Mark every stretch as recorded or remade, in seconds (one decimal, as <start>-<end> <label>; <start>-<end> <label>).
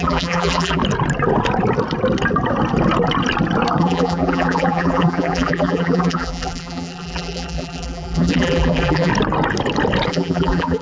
0.0-0.8 remade; 0.8-3.8 recorded; 3.8-9.1 remade; 9.1-10.1 recorded; 10.1-10.8 remade